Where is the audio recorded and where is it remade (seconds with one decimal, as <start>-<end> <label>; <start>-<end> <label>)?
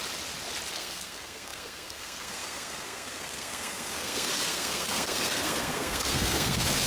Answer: 0.0-0.7 recorded; 0.7-6.9 remade